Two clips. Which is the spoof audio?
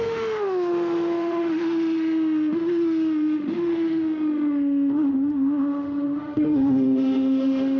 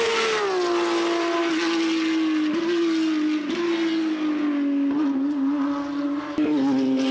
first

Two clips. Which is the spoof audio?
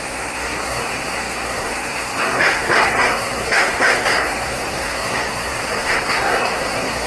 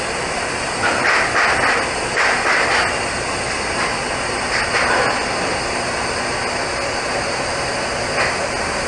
first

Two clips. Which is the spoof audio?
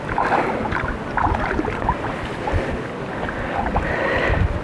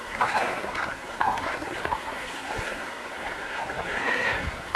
second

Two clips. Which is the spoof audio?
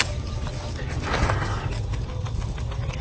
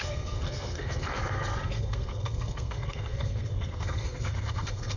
second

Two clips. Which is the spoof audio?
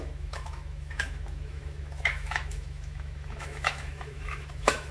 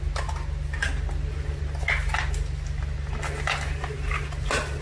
first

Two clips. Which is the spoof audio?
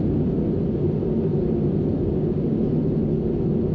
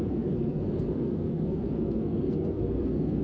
second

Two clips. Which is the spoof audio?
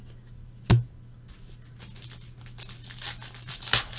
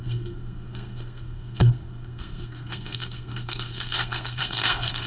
second